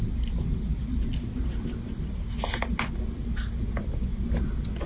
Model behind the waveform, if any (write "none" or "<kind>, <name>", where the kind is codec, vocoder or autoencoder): none